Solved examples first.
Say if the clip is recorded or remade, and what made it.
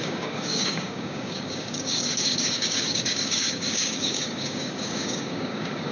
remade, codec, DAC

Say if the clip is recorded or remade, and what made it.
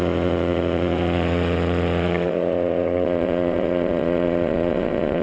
remade, vocoder, Vocos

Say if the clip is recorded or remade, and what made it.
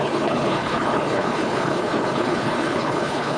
remade, codec, HILCodec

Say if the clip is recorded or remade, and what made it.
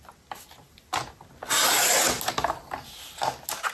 recorded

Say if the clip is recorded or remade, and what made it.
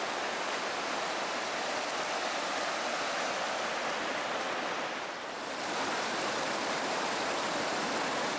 remade, vocoder, BigVGAN v2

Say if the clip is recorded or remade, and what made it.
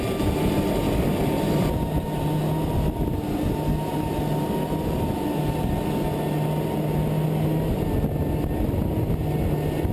recorded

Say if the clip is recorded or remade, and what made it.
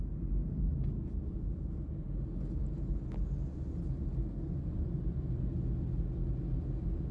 recorded